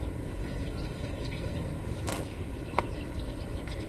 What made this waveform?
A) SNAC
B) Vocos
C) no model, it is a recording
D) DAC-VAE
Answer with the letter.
A